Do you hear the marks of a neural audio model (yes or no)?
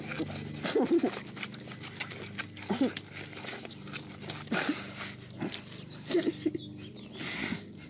no